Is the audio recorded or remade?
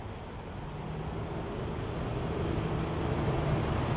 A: recorded